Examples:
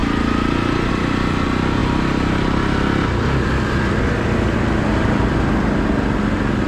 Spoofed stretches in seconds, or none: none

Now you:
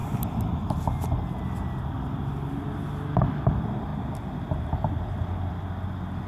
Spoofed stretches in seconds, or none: 0.0-2.5 (vocoder, BigVGAN v2)

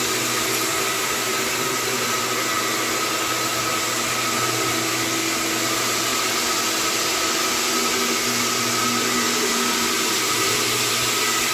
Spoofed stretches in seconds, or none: 0.7-2.3 (vocoder, BigVGAN v2)

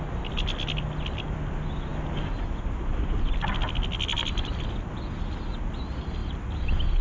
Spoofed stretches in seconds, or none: 6.2-7.0 (vocoder, BigVGAN v2)

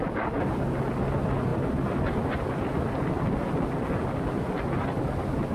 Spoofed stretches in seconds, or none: none

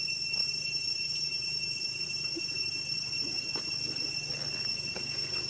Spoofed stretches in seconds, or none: 0.4-3.7 (vocoder, BigVGAN v2)

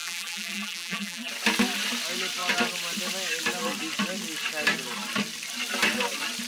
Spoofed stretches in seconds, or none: 0.0-1.3 (vocoder, BigVGAN v2)